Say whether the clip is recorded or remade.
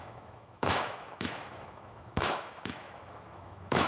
remade